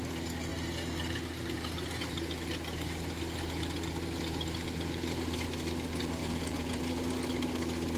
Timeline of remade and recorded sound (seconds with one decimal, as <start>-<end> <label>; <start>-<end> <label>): 0.0-6.2 recorded; 6.2-6.8 remade; 6.8-8.0 recorded